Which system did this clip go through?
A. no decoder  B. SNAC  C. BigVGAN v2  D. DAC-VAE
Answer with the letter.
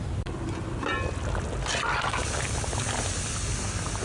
A